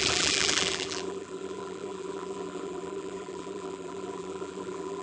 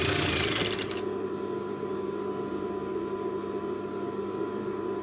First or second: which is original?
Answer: second